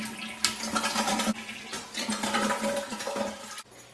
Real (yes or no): yes